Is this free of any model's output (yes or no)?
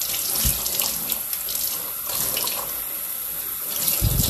yes